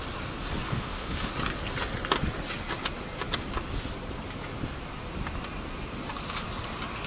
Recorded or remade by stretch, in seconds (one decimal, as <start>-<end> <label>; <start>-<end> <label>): 0.0-0.7 recorded; 0.7-1.3 remade; 1.3-7.1 recorded